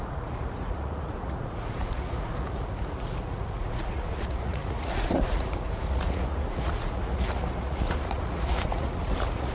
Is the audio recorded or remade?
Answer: remade